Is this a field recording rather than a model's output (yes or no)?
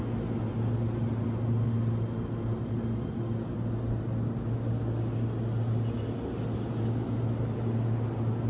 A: yes